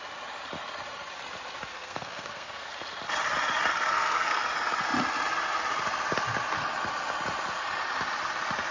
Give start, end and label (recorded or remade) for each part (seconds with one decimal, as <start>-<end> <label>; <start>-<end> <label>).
0.0-1.7 recorded; 1.7-2.7 remade; 2.7-3.7 recorded; 3.7-4.4 remade; 4.4-8.7 recorded